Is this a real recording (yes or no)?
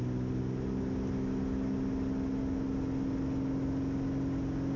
yes